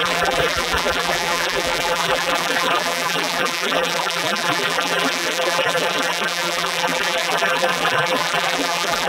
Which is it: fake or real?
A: fake